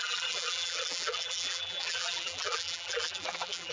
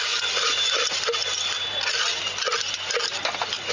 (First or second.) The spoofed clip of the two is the first